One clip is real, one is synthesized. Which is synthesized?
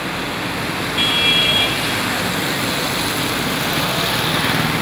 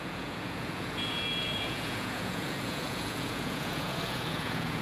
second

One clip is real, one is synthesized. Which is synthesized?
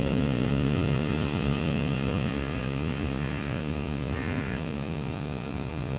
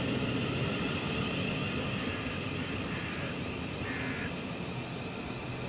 first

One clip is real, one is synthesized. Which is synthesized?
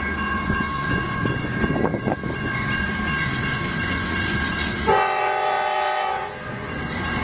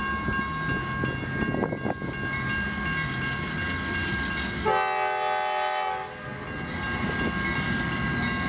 first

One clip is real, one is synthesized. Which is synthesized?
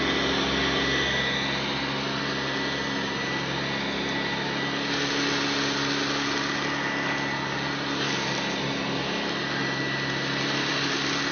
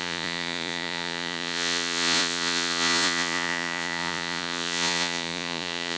second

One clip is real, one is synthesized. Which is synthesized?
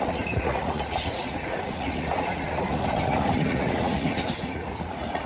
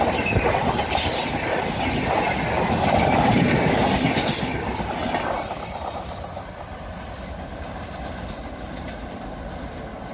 first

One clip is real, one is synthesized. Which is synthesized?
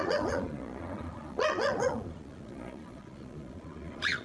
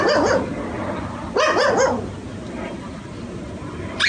first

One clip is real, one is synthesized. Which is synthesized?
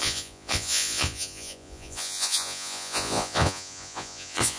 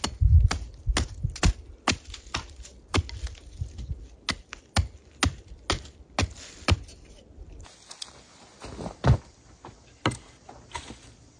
first